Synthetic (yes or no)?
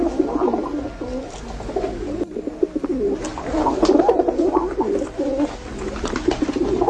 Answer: no